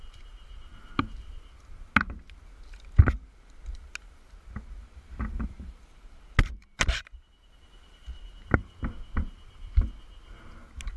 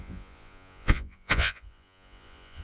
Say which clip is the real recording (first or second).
first